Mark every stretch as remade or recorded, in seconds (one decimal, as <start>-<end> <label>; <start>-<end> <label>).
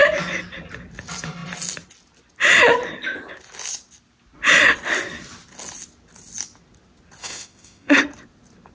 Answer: 0.0-7.2 recorded; 7.2-8.0 remade; 8.0-8.7 recorded